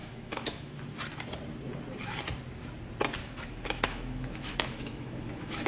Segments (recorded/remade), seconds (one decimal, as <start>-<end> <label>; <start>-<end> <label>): 0.0-0.8 remade; 0.8-3.2 recorded; 3.2-5.7 remade